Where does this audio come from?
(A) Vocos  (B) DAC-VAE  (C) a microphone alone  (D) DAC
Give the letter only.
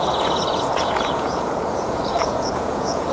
A